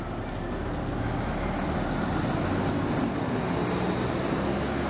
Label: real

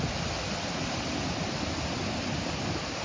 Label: real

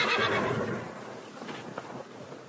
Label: fake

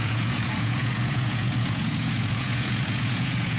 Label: fake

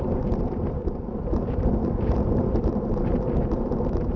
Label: real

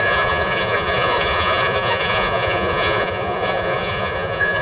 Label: fake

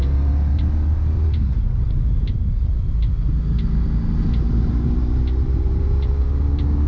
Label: real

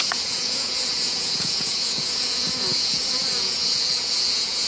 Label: fake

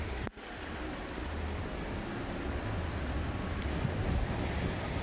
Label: real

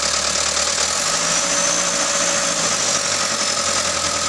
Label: real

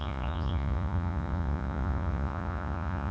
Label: fake